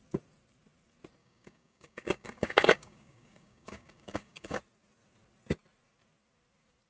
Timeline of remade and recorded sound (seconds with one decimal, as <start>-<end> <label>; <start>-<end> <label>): 0.0-1.2 recorded; 1.2-4.6 remade; 4.6-6.9 recorded